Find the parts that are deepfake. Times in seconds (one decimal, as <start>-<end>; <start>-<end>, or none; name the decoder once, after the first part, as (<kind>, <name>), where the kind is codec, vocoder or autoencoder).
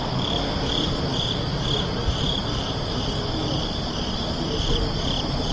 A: 0.0-1.5 (vocoder, BigVGAN v2); 2.2-5.5